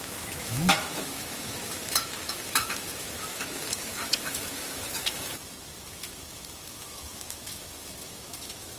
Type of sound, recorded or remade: remade